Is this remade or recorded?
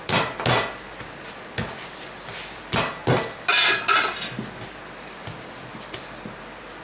recorded